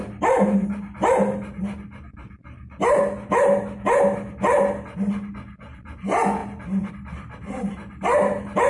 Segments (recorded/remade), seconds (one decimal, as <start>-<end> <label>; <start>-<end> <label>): 0.0-8.7 recorded